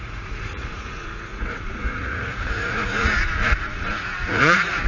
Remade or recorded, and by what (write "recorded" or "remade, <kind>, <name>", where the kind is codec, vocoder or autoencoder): remade, vocoder, Vocos